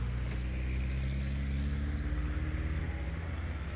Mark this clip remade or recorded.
recorded